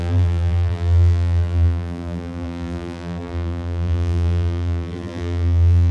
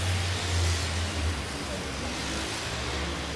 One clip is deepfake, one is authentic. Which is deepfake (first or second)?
first